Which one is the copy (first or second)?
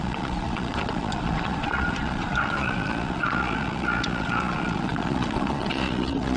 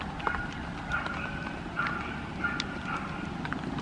first